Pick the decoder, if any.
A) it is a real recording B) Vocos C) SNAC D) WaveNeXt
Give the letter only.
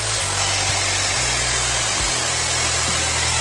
A